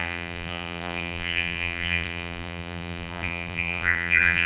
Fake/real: fake